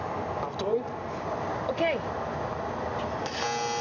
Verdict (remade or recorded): recorded